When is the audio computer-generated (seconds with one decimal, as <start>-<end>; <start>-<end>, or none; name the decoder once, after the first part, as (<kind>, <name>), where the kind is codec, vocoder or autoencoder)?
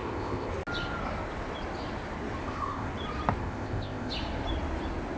0.0-0.5 (codec, ZipCodec); 2.4-2.9; 3.4-4.1